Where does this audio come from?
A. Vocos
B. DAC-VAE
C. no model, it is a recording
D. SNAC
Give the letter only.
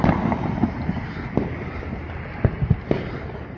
C